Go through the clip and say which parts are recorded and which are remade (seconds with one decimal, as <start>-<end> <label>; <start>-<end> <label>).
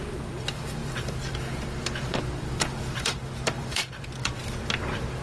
0.0-5.2 remade